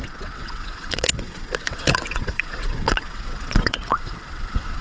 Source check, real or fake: fake